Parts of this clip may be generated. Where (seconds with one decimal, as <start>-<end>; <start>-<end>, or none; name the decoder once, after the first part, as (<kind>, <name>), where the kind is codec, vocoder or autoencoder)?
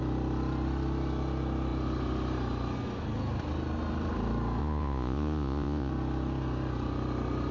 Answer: 4.6-5.9 (vocoder, Vocos)